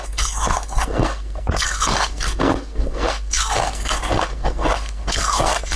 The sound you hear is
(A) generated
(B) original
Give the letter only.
A